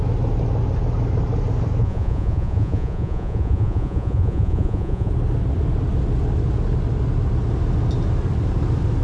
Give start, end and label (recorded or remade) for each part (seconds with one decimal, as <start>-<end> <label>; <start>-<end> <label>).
0.0-1.8 recorded; 1.8-5.1 remade; 5.1-9.0 recorded